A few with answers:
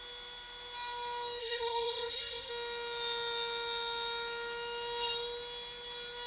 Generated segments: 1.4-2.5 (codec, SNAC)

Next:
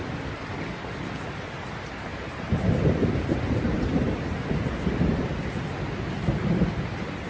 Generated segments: 2.1-5.1 (vocoder, BigVGAN v2)

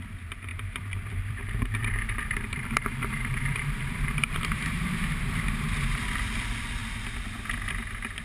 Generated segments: 0.5-5.4 (vocoder, BigVGAN v2)

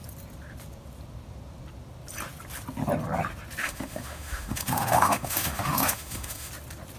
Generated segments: 3.6-6.5 (autoencoder, DAC-VAE)

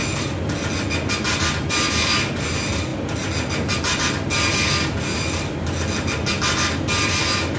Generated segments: none

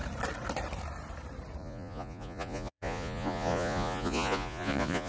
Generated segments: 1.6-5.1 (vocoder, Vocos)